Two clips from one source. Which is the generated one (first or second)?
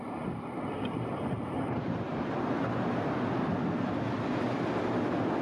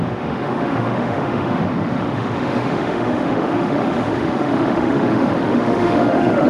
second